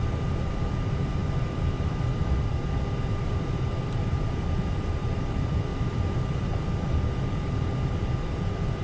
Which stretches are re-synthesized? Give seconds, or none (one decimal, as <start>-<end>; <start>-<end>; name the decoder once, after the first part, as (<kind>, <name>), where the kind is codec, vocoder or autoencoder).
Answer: 0.0-8.8 (vocoder, BigVGAN v2)